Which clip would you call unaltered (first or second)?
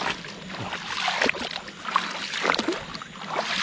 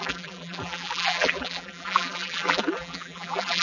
first